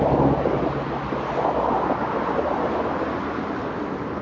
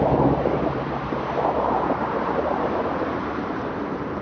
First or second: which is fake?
second